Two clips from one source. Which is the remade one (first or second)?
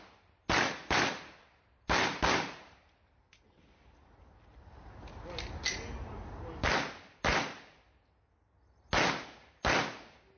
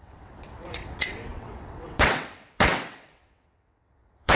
second